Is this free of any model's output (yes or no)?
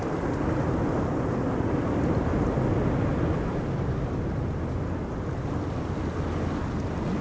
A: yes